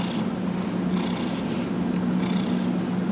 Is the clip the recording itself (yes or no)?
yes